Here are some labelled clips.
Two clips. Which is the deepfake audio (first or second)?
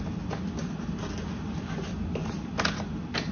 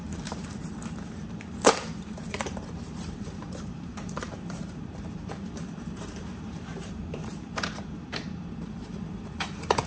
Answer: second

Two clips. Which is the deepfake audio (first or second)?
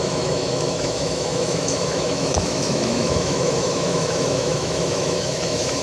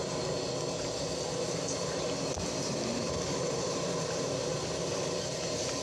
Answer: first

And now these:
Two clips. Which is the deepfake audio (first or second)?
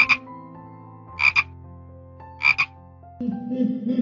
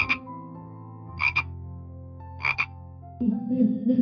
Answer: second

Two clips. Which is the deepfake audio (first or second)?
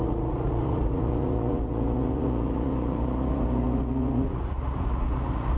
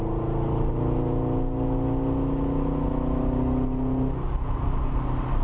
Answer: first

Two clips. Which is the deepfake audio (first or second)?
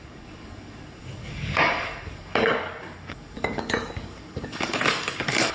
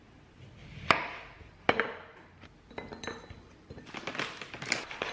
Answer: first